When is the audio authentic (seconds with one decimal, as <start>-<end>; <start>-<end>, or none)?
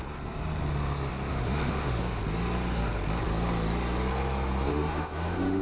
0.0-1.3; 2.2-4.7